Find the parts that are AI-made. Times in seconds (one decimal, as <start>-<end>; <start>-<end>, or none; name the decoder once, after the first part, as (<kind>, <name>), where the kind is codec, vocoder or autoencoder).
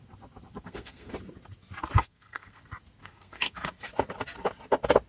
0.5-1.1 (codec, SNAC); 2.0-2.6; 3.0-3.7